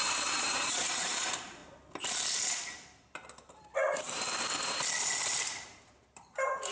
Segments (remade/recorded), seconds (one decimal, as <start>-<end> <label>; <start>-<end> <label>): 0.0-1.6 remade; 1.6-5.6 recorded; 5.6-6.7 remade